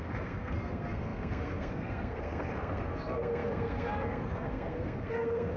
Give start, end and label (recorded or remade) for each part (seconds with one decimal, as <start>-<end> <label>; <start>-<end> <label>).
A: 0.0-5.6 remade